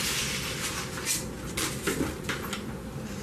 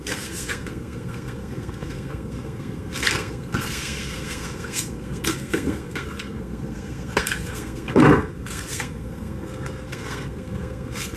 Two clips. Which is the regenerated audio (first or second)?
second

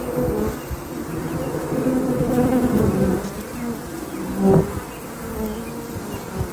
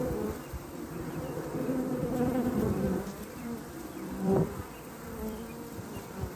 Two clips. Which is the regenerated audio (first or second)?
second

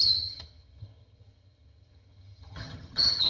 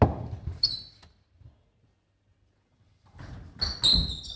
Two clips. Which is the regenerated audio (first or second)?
first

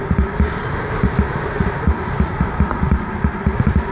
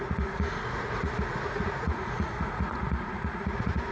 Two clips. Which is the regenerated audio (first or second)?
second